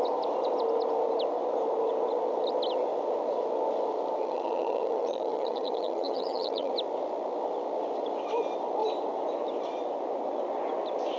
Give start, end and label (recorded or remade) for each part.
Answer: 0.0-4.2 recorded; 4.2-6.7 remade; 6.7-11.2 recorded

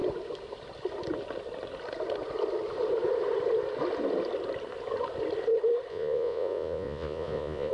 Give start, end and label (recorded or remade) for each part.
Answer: 0.0-5.9 recorded; 5.9-7.7 remade

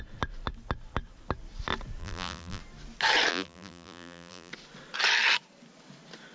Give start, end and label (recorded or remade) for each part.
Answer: 0.0-2.0 recorded; 2.0-2.6 remade; 2.6-3.3 recorded; 3.3-4.5 remade; 4.5-6.3 recorded